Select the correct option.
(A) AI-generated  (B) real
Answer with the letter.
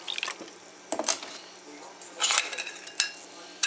B